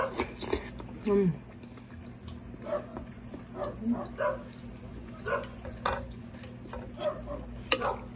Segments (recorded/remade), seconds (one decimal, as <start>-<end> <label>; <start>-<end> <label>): 0.0-2.9 recorded; 2.9-3.4 remade; 3.4-4.9 recorded; 4.9-6.3 remade; 6.3-8.2 recorded